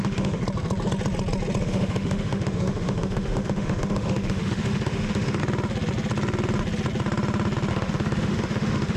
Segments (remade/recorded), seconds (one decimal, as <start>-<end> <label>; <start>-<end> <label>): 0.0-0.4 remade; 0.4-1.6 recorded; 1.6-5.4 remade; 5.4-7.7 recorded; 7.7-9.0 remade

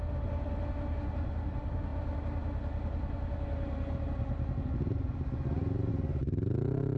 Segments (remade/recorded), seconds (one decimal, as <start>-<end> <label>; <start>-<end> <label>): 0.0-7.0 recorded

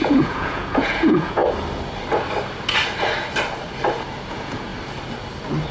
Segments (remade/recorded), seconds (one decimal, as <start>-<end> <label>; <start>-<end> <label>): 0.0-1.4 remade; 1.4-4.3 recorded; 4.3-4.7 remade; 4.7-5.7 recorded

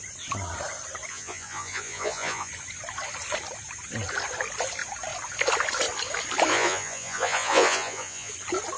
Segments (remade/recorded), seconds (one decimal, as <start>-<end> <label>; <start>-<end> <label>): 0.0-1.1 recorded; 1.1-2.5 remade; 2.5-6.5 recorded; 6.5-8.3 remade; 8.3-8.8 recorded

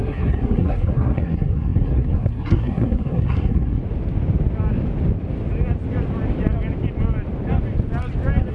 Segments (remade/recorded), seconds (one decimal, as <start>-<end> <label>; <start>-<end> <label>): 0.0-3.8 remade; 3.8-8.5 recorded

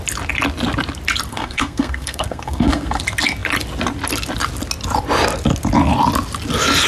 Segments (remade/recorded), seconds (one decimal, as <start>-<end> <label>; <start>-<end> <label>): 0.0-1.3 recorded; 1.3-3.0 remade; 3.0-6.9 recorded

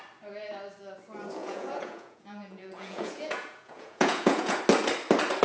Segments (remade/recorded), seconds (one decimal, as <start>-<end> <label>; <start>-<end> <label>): 0.0-1.4 recorded; 1.4-4.6 remade; 4.6-5.4 recorded

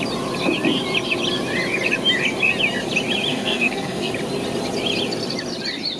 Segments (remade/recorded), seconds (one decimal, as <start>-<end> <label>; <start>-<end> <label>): 0.0-3.3 recorded; 3.3-4.1 remade; 4.1-6.0 recorded